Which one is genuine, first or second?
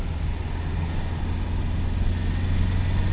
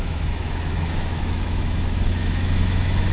first